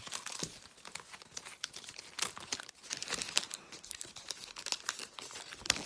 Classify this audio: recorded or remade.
recorded